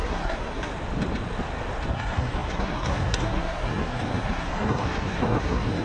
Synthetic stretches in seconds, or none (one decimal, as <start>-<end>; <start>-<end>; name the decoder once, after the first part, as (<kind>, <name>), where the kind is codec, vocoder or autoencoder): 0.0-0.7 (codec, SNAC); 1.9-5.8